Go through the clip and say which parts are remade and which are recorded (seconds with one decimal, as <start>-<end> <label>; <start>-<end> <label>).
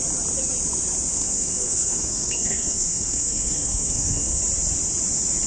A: 0.0-1.1 recorded; 1.1-4.4 remade; 4.4-5.5 recorded